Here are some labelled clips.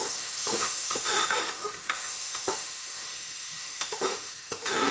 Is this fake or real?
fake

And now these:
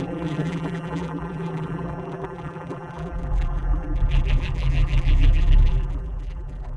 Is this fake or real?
fake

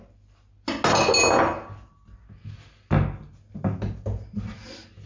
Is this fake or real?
real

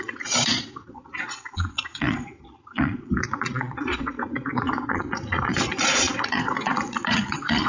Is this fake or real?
fake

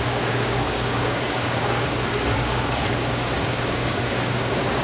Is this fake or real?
fake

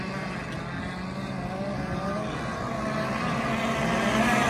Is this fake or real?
real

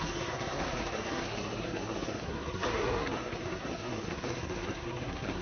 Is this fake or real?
fake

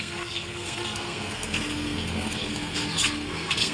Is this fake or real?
fake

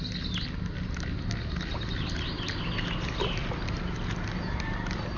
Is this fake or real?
real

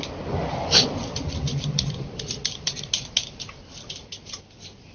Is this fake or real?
real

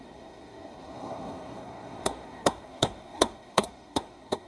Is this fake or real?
fake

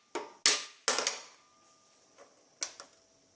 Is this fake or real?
real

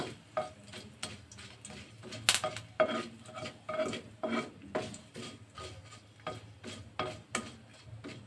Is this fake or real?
real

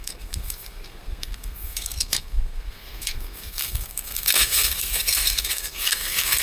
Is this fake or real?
fake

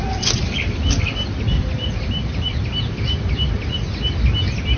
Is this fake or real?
real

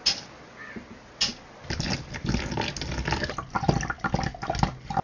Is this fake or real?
real